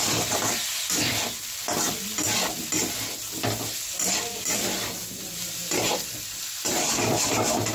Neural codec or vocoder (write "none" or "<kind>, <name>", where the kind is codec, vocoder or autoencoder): vocoder, BigVGAN v2